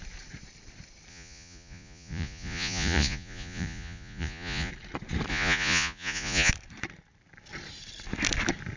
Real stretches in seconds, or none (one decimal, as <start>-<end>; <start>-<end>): 0.0-1.1; 4.7-5.3; 6.5-8.8